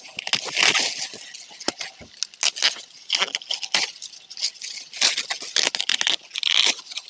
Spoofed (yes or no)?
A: no